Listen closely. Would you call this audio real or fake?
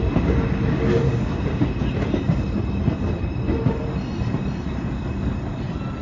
real